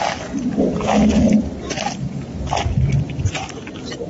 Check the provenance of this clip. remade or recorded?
recorded